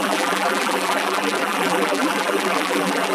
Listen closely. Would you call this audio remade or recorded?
remade